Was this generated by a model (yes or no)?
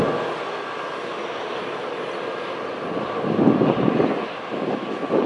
no